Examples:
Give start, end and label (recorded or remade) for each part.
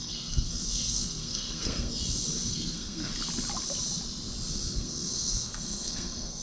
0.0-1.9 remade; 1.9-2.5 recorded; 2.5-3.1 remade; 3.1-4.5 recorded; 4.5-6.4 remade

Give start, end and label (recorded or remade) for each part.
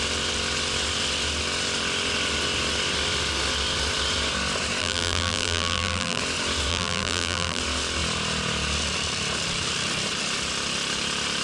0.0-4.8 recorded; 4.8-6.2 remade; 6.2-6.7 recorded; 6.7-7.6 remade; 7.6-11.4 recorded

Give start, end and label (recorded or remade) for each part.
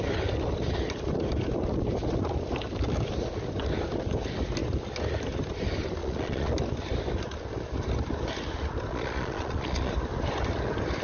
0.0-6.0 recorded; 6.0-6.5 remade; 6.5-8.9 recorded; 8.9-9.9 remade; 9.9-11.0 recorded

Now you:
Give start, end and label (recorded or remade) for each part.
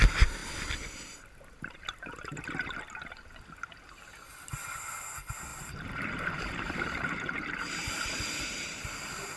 0.0-5.5 recorded; 5.5-9.4 remade